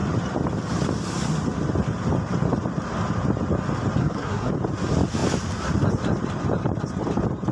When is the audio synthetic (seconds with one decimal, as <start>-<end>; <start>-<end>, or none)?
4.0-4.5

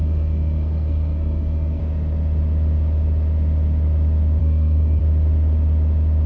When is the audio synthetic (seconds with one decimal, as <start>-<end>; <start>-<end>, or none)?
0.0-1.8; 4.4-5.0

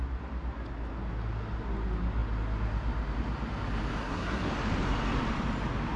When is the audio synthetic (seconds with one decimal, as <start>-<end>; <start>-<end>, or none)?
4.0-4.5

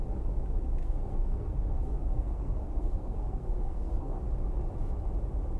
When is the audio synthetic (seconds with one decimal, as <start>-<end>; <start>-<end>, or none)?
0.8-4.2